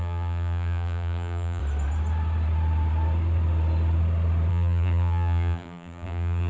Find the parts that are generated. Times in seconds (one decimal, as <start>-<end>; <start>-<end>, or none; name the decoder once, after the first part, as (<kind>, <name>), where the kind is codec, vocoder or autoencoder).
0.0-1.6 (vocoder, BigVGAN v2); 4.5-6.5